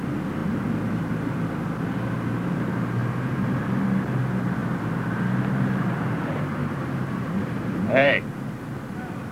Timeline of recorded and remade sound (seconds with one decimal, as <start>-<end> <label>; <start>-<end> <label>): 0.0-3.0 recorded; 3.0-3.6 remade; 3.6-6.6 recorded; 6.6-8.3 remade; 8.3-9.3 recorded